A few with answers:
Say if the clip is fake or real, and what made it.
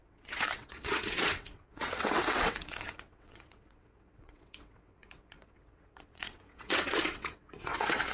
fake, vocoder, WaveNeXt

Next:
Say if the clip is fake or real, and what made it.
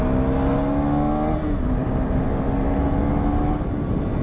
real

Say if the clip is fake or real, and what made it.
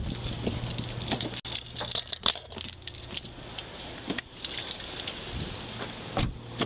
real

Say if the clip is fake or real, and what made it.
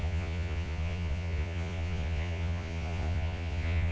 fake, vocoder, Vocos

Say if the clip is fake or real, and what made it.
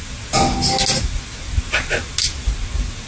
real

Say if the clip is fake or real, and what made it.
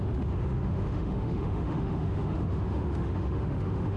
fake, autoencoder, DAC-VAE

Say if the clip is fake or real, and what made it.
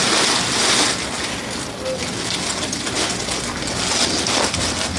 real